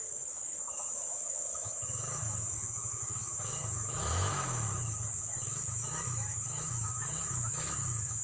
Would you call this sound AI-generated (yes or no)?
yes